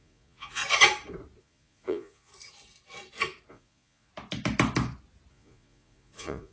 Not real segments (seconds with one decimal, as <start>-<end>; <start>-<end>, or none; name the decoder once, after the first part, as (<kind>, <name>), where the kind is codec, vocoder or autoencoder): 0.0-0.6 (vocoder, Vocos); 1.4-2.3; 3.5-4.1; 5.3-6.5